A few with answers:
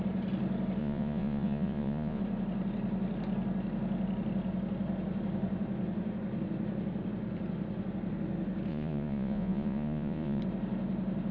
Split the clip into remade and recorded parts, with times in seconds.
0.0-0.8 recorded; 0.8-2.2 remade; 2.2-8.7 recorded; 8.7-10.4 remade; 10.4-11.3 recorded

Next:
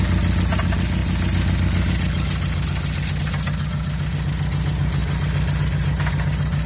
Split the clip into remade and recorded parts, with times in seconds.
0.0-6.7 recorded

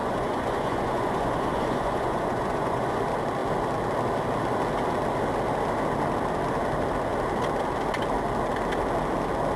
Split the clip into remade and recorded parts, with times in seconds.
0.0-3.0 remade; 3.0-9.6 recorded

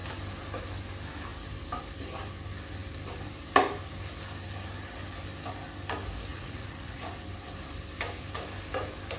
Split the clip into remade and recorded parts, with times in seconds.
0.0-6.3 recorded; 6.3-7.1 remade; 7.1-9.2 recorded

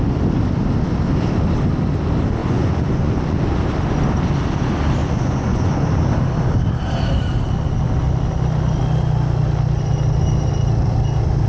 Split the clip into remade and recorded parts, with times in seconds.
0.0-2.4 recorded; 2.4-3.4 remade; 3.4-5.0 recorded; 5.0-5.9 remade; 5.9-11.5 recorded

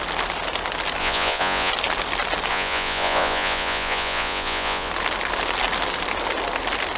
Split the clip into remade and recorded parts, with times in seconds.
0.0-1.0 recorded; 1.0-1.7 remade; 1.7-2.5 recorded; 2.5-4.9 remade; 4.9-7.0 recorded

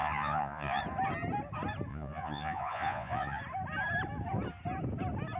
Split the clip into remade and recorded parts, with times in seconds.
0.0-0.8 remade; 0.8-1.9 recorded; 1.9-3.4 remade; 3.4-5.4 recorded